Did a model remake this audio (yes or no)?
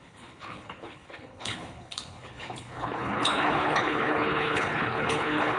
yes